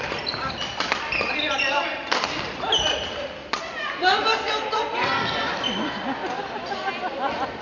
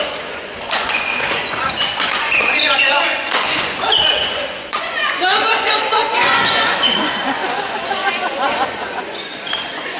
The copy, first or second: second